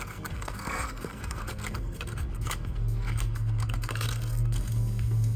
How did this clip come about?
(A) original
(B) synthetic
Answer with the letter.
B